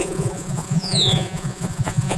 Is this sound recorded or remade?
remade